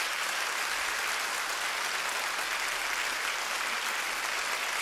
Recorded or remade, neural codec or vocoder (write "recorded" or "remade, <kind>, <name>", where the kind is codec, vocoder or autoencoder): recorded